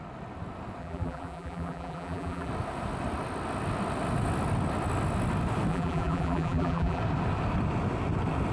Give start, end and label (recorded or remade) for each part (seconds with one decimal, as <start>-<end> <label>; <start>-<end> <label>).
0.0-0.8 recorded; 0.8-2.5 remade; 2.5-5.7 recorded; 5.7-7.0 remade; 7.0-8.5 recorded